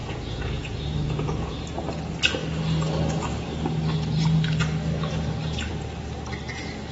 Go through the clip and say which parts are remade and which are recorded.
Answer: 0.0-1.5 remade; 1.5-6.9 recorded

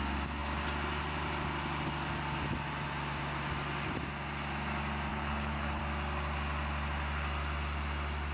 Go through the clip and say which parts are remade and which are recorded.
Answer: 0.0-5.1 recorded; 5.1-5.8 remade; 5.8-8.3 recorded

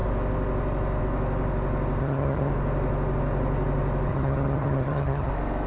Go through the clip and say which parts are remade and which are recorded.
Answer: 0.0-2.0 recorded; 2.0-2.5 remade; 2.5-4.1 recorded; 4.1-5.3 remade; 5.3-5.7 recorded

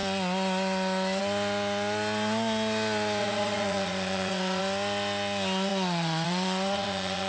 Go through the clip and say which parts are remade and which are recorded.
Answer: 0.0-3.2 recorded; 3.2-4.6 remade; 4.6-5.7 recorded; 5.7-7.3 remade